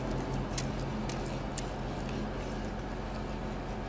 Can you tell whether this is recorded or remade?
recorded